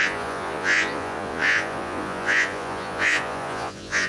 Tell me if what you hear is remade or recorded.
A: remade